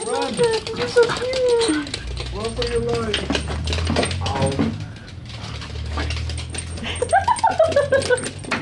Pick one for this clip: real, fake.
real